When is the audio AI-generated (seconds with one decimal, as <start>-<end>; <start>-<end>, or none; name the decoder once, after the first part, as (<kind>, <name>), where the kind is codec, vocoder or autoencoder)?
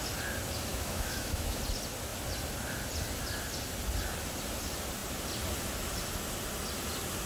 0.7-1.6 (autoencoder, DAC-VAE)